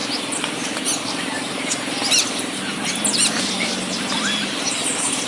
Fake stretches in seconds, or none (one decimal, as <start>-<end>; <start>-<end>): 2.0-5.3